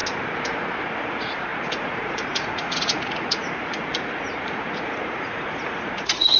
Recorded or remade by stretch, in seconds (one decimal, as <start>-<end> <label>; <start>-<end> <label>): 0.0-1.0 recorded; 1.0-6.4 remade